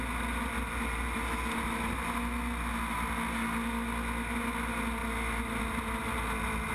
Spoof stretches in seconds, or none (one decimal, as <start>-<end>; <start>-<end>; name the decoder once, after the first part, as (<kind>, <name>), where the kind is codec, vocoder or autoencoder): none